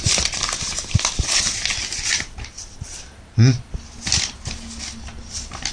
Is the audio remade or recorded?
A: recorded